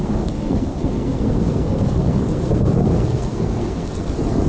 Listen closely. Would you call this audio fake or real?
fake